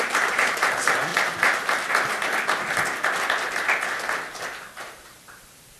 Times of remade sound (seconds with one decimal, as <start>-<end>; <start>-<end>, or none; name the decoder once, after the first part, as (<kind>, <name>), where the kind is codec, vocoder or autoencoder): 0.0-1.1 (vocoder, BigVGAN v2); 4.6-5.8